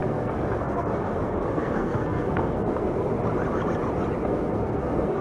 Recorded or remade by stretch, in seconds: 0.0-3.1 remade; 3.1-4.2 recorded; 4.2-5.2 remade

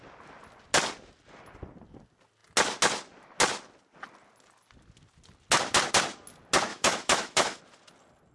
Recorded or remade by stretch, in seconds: 0.0-6.7 recorded; 6.7-7.6 remade; 7.6-8.3 recorded